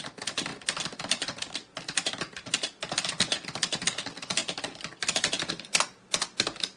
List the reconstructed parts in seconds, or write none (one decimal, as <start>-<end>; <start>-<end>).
none